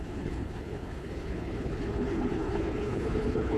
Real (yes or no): no